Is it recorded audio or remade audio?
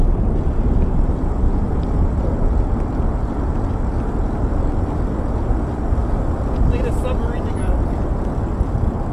recorded